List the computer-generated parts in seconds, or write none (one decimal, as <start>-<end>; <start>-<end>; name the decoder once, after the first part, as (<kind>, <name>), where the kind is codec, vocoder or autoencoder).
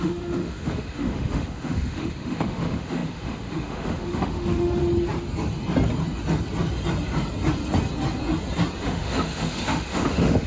0.0-4.8 (autoencoder, DAC-VAE); 8.8-10.5